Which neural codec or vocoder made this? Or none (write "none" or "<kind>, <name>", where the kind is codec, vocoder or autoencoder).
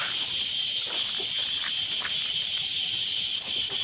none